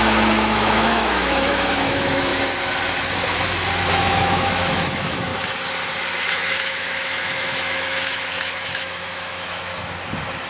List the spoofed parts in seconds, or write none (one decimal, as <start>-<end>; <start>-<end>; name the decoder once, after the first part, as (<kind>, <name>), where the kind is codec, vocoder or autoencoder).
0.0-2.3 (autoencoder, DAC-VAE); 3.9-5.3; 6.3-9.7